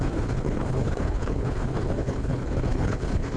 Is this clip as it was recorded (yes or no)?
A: no